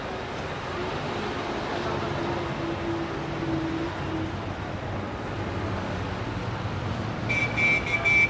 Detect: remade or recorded recorded